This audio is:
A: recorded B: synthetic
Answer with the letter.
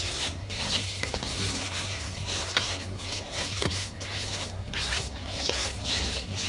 B